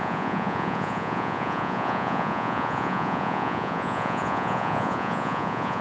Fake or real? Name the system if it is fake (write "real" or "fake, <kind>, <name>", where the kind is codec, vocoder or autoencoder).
fake, vocoder, Vocos